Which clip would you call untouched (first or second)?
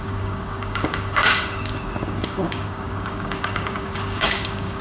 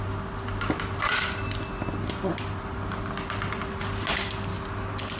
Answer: second